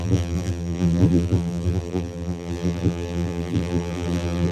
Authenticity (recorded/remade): remade